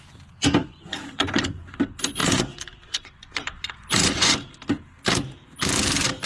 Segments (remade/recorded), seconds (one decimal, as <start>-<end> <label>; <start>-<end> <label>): 0.0-0.6 recorded; 0.6-1.8 remade; 1.8-2.2 recorded; 2.2-4.3 remade; 4.3-6.3 recorded